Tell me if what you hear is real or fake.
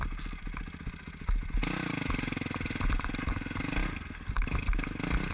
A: real